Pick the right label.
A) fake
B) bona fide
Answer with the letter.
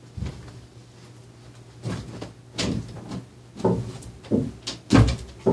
B